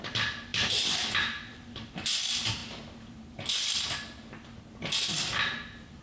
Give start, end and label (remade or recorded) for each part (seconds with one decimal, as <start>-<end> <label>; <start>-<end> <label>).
0.0-2.6 remade; 2.6-6.0 recorded